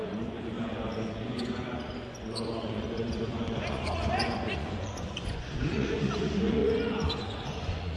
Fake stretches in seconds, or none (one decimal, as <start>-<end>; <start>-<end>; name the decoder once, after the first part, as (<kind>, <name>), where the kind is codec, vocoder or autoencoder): 0.0-8.0 (vocoder, Vocos)